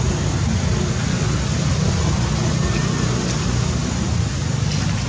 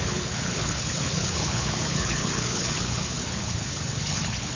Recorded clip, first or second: first